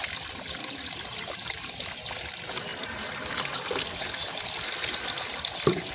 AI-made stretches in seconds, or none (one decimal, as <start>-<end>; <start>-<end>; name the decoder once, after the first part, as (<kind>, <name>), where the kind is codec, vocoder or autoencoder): none